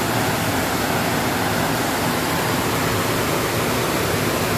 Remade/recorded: recorded